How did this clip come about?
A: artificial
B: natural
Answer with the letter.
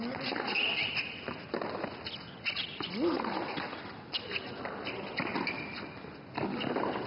B